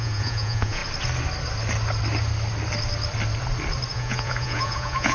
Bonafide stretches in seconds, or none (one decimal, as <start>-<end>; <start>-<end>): 0.8-3.9